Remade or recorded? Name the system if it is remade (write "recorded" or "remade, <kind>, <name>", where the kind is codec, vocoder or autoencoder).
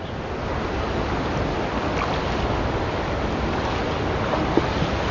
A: recorded